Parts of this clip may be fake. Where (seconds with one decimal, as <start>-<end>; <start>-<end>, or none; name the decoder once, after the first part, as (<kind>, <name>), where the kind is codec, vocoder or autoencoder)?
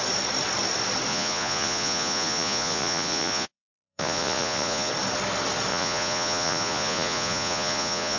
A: 1.1-4.9 (vocoder, Vocos); 5.7-8.2